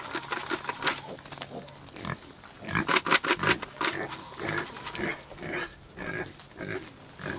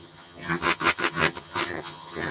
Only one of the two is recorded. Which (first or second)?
first